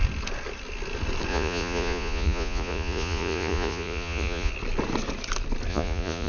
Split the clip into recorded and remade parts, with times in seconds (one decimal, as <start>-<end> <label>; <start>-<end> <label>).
0.0-1.3 recorded; 1.3-4.5 remade; 4.5-5.7 recorded; 5.7-6.3 remade